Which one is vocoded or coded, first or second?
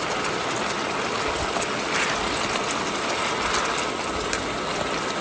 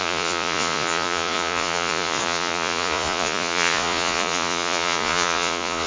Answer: second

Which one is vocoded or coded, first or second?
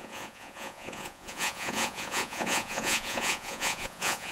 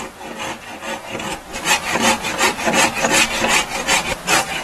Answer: first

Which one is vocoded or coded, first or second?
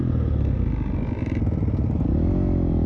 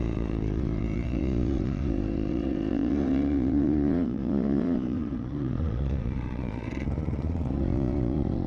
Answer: second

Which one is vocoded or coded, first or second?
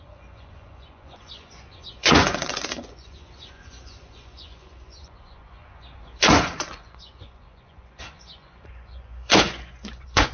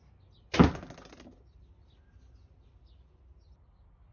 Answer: first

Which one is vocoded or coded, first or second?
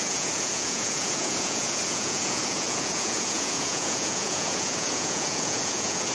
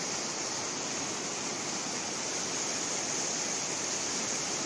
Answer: first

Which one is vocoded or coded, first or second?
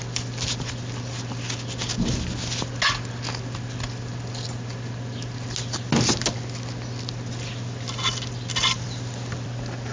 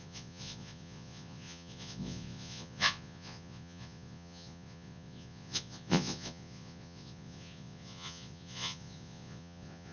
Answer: second